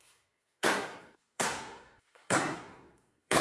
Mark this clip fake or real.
fake